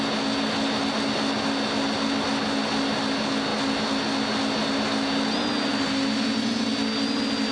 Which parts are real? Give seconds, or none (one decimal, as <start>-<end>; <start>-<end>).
0.0-7.5

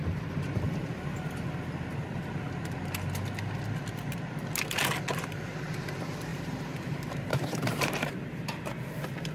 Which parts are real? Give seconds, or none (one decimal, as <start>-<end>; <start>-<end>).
0.0-6.3; 8.7-9.3

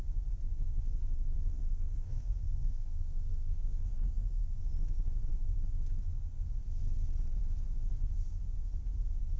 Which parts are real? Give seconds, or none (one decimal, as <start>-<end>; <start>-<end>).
0.0-1.5; 4.6-9.4

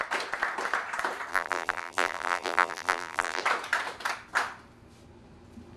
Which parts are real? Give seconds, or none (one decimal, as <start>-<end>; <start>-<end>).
0.0-1.3; 3.4-5.8

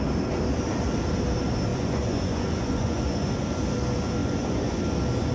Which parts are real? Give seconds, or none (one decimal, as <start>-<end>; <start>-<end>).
0.0-1.7; 3.3-4.2; 4.8-5.3

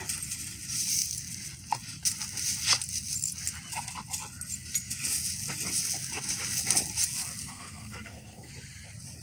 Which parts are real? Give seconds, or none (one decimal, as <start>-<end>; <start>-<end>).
0.0-7.4; 8.5-9.2